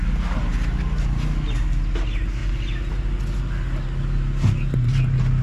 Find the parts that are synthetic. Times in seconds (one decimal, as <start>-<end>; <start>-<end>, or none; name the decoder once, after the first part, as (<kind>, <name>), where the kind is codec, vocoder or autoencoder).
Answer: none

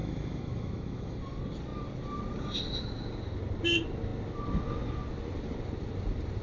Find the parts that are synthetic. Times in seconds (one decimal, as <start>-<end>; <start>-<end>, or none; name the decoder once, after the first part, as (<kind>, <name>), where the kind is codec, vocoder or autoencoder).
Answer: 0.0-1.2 (autoencoder, DAC-VAE)

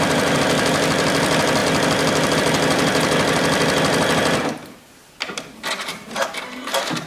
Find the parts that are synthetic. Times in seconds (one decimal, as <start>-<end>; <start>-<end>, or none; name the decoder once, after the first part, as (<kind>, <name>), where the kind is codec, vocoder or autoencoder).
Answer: 0.0-1.6 (vocoder, BigVGAN v2); 5.9-7.1

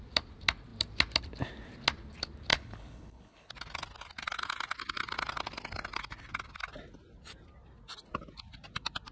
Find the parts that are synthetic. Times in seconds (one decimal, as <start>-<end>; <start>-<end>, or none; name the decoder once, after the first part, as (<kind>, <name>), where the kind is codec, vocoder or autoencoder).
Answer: 2.5-3.5 (codec, HILCodec)

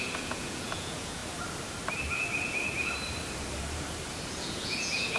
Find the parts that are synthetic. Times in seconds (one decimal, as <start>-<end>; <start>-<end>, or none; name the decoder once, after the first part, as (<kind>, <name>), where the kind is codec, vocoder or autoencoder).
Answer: 0.0-1.2 (vocoder, Vocos); 4.3-5.2

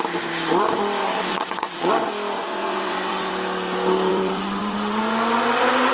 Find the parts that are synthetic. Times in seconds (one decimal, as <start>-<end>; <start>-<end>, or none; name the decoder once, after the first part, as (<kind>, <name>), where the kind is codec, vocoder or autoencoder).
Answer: 1.0-1.9 (vocoder, WaveNeXt); 2.5-3.3; 4.1-5.0

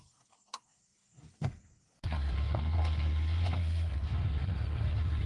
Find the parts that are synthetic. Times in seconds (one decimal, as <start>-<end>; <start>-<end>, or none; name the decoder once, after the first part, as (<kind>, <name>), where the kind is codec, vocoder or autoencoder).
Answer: 0.0-5.3 (codec, SNAC)

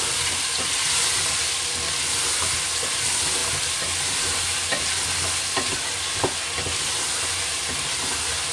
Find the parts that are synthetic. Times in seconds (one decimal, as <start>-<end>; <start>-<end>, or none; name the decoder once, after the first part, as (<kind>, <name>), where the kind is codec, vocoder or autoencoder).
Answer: none